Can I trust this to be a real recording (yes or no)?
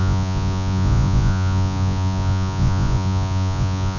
no